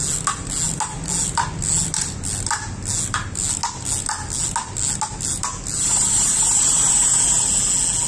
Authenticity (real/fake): real